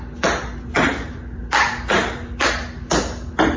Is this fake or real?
real